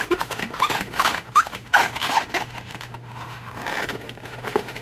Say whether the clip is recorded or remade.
remade